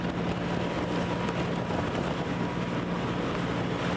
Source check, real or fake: real